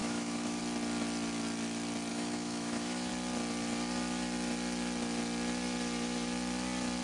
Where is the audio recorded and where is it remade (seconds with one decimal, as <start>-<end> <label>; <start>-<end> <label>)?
0.0-0.6 remade; 0.6-2.1 recorded; 2.1-3.1 remade; 3.1-7.0 recorded